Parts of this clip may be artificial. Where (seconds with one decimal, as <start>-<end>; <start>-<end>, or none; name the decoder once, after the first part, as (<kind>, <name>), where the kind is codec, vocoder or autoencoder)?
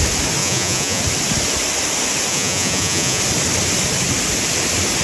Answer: 0.4-1.0 (vocoder, Vocos); 2.3-3.2